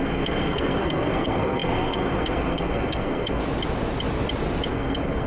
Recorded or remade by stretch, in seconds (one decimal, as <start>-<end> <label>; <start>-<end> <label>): 0.0-3.4 remade; 3.4-4.7 recorded; 4.7-5.3 remade